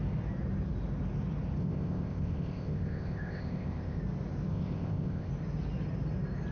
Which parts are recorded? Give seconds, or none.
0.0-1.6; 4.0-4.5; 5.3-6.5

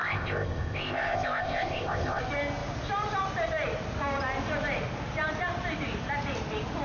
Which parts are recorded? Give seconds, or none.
2.2-6.8

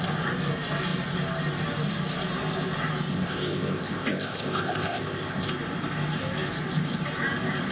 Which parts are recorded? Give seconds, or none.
0.0-3.1; 5.5-7.7

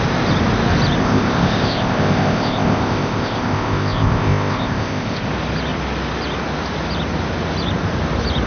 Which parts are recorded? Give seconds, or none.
0.0-1.0; 5.3-8.5

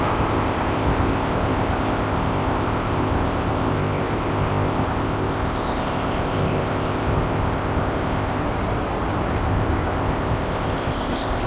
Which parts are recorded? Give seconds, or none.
8.4-9.3